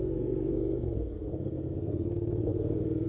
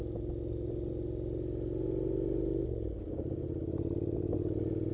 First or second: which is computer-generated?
first